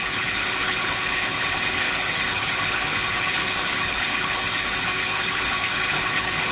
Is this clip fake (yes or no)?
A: yes